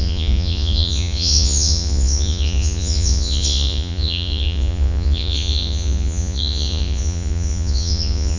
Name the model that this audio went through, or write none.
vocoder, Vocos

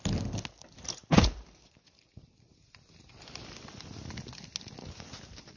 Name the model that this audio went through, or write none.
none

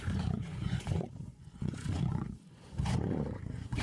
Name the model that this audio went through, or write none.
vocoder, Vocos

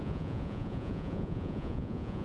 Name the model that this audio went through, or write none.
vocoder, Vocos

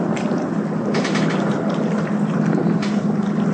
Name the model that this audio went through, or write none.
none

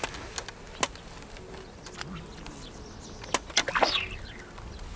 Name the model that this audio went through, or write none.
none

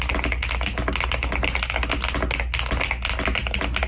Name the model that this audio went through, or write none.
none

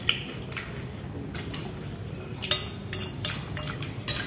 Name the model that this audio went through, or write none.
none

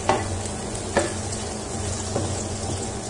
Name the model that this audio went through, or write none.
vocoder, Vocos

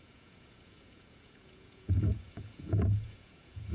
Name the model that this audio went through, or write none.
vocoder, Vocos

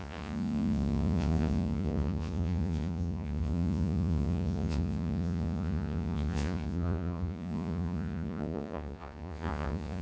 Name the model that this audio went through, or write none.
vocoder, Vocos